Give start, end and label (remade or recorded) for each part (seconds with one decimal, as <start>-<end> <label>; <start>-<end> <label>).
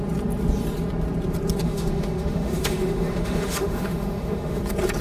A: 0.0-1.6 recorded; 1.6-4.6 remade; 4.6-5.0 recorded